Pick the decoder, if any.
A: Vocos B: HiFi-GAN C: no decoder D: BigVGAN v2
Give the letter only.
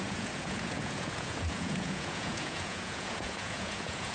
A